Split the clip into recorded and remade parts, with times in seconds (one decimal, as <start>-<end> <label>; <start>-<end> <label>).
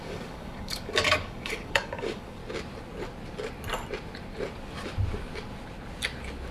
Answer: 0.0-2.4 remade; 2.4-6.5 recorded